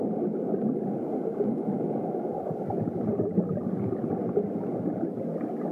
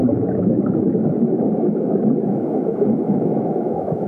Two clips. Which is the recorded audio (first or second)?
first